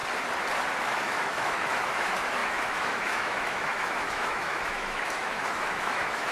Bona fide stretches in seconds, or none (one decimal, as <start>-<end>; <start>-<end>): 0.0-0.8